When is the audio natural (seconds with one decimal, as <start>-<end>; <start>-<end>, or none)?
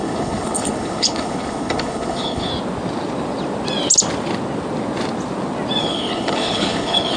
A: 2.5-5.8